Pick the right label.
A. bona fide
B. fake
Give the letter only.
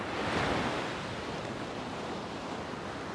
A